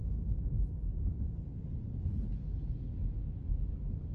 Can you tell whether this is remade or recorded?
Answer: recorded